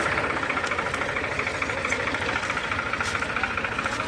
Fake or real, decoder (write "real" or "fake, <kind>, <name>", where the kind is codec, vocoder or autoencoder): real